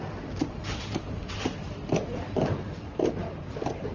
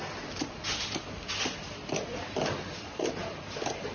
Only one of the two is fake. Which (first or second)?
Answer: first